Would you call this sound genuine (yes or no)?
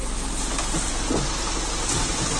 yes